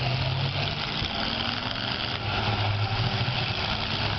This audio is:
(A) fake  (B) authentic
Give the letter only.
B